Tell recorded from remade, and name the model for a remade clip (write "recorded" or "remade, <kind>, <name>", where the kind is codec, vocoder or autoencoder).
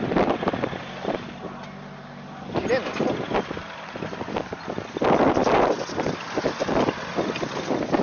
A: recorded